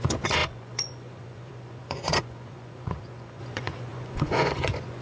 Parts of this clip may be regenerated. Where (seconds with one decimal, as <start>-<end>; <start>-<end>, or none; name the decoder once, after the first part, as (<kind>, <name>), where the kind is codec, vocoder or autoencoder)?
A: 0.0-5.0 (vocoder, Vocos)